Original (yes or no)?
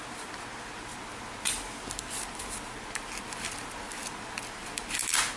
yes